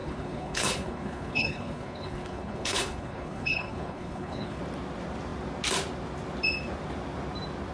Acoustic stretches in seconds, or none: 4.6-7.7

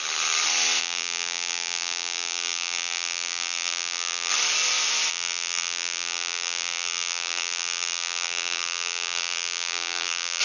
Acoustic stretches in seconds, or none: 0.0-0.8; 4.3-5.1

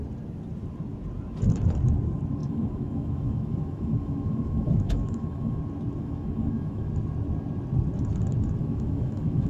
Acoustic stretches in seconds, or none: 0.0-2.4; 5.6-6.0; 6.9-8.6

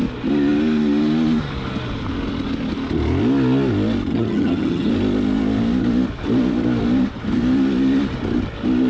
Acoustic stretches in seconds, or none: 0.0-4.1; 4.9-8.9

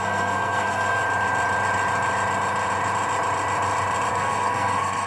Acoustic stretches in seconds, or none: 1.0-4.1

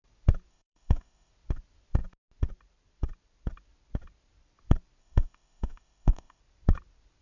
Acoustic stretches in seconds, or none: 0.0-0.5; 1.3-5.0; 6.4-7.2

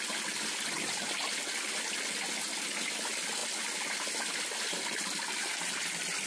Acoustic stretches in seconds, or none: 0.0-6.3